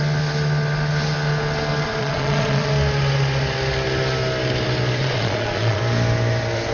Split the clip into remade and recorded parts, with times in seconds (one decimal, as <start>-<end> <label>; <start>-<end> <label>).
0.0-2.0 recorded; 2.0-2.7 remade; 2.7-5.0 recorded; 5.0-5.8 remade; 5.8-6.7 recorded